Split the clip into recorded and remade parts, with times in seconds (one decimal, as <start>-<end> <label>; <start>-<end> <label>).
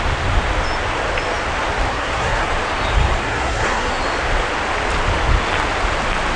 0.0-1.9 recorded; 1.9-2.5 remade; 2.5-3.2 recorded; 3.2-3.9 remade; 3.9-6.4 recorded